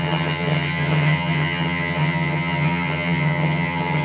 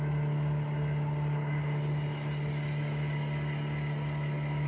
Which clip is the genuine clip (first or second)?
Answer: second